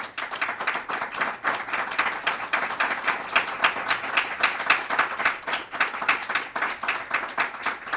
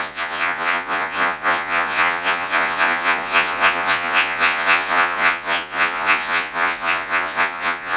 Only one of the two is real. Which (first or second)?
first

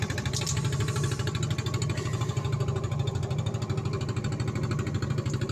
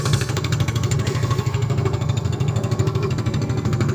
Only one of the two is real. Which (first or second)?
first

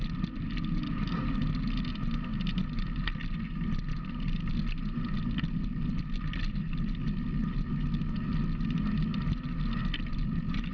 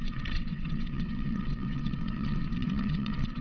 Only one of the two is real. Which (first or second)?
first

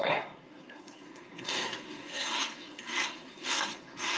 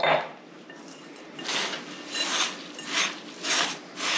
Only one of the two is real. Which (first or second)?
second